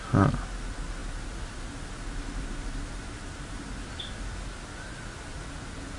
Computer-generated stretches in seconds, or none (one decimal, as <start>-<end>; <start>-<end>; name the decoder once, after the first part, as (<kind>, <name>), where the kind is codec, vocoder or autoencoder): none